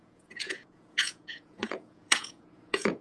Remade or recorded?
remade